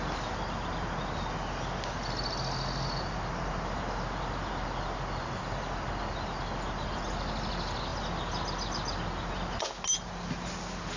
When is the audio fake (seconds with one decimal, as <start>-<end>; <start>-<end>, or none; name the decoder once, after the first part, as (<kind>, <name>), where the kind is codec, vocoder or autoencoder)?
none